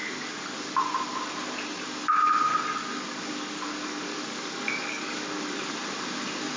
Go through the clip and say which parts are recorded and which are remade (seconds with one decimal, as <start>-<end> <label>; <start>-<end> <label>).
0.0-0.8 remade; 0.8-2.5 recorded; 2.5-5.7 remade; 5.7-6.6 recorded